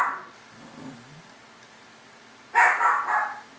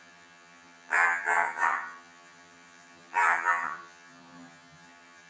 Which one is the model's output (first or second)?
second